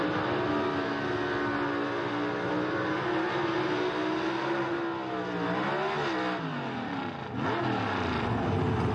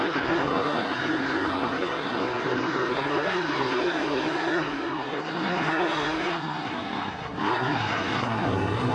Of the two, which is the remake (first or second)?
second